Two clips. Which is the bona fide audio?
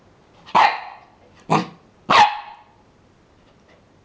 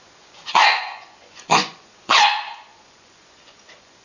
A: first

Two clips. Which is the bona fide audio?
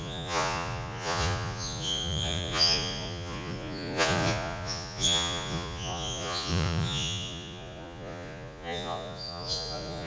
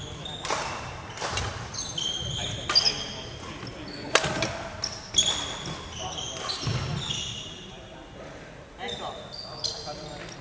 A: second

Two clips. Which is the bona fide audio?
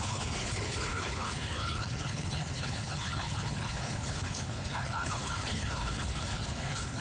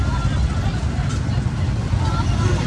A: second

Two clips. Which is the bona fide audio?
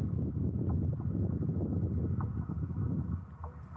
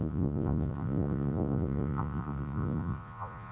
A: first